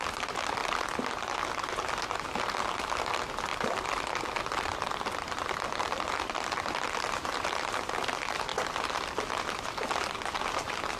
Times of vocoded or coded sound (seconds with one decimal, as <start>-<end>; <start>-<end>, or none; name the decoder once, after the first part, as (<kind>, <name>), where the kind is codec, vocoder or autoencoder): 3.5-7.7 (vocoder, BigVGAN v2); 8.5-9.4